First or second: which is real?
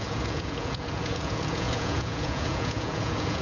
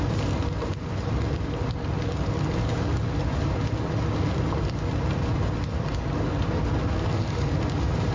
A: second